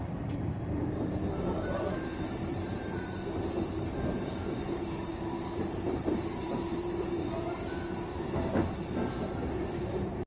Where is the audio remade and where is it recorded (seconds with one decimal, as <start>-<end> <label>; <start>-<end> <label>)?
0.0-8.1 remade; 8.1-9.8 recorded; 9.8-10.3 remade